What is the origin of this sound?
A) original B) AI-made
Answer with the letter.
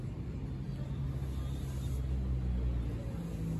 A